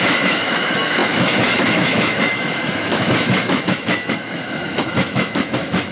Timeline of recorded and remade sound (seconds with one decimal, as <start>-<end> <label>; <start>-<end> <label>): 0.0-5.9 remade